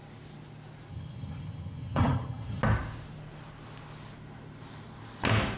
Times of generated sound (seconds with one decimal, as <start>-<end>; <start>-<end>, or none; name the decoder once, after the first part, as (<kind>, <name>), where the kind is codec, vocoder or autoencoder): 0.9-2.6 (vocoder, HiFi-GAN)